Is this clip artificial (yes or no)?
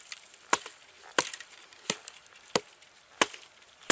no